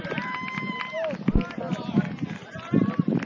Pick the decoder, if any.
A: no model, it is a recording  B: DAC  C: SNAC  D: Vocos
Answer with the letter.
A